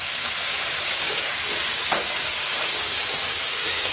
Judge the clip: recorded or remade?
remade